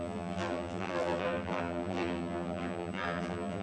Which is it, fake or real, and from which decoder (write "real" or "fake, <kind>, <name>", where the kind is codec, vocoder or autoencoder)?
fake, vocoder, BigVGAN v2